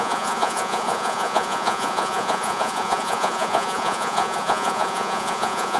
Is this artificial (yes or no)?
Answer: yes